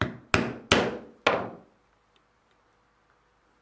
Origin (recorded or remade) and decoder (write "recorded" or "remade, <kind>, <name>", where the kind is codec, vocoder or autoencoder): recorded